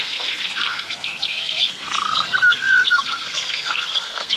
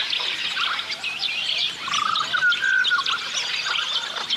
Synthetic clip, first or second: first